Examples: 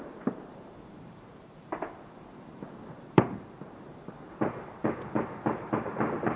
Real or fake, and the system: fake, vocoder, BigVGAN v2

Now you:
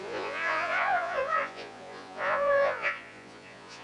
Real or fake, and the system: fake, vocoder, Vocos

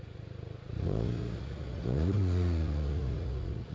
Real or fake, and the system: fake, vocoder, Vocos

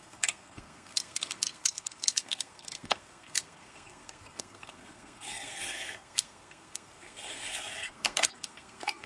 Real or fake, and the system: fake, codec, SNAC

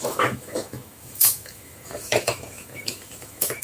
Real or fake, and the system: fake, autoencoder, DAC-VAE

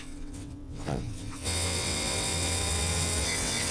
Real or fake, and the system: fake, vocoder, WaveNeXt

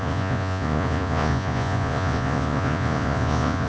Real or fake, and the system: fake, vocoder, Vocos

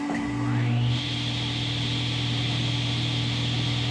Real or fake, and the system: real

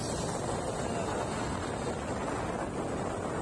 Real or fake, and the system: real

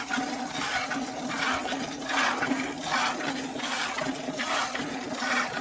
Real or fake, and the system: real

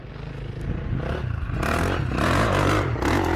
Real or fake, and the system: real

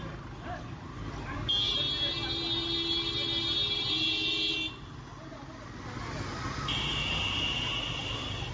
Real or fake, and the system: real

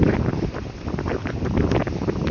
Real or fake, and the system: real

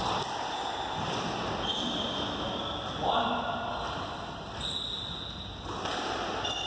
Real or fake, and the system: real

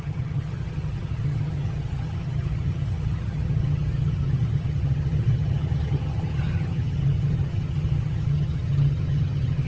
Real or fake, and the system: fake, vocoder, HiFi-GAN